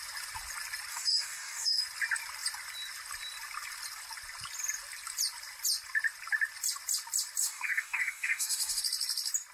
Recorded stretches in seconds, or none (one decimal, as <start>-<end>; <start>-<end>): 0.0-0.9; 1.8-7.4; 8.8-9.5